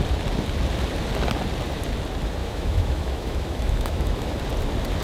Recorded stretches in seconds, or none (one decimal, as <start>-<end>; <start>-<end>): 0.0-2.4; 4.4-5.0